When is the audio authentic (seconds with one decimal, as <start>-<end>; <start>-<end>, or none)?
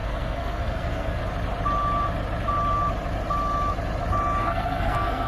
1.2-4.4